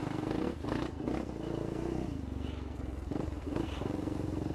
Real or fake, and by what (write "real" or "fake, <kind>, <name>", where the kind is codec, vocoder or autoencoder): fake, codec, SNAC